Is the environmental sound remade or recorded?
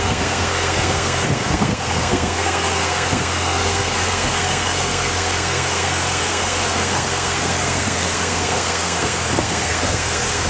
remade